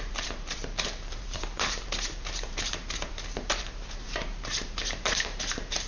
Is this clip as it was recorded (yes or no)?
no